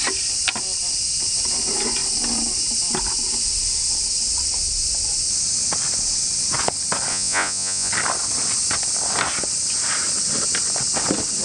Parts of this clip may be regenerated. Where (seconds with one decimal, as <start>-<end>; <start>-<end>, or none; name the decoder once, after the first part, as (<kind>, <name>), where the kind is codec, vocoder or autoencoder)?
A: 7.1-7.9 (vocoder, Vocos)